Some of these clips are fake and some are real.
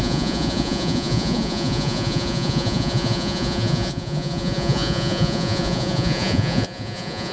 fake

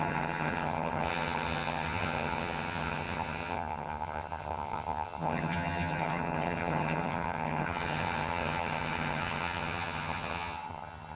fake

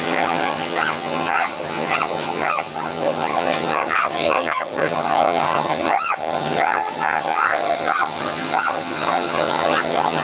fake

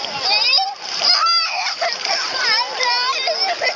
fake